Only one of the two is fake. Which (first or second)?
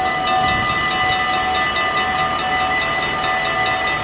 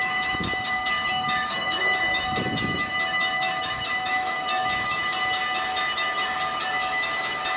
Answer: second